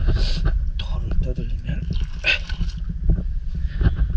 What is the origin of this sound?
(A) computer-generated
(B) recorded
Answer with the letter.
B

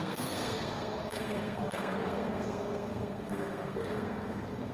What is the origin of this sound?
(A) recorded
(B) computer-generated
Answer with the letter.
B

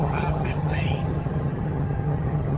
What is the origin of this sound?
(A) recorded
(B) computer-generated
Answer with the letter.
B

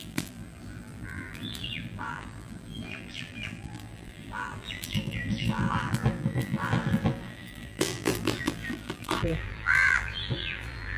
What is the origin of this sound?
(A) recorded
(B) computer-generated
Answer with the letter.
B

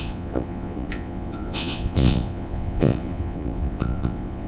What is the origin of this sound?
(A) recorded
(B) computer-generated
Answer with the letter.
B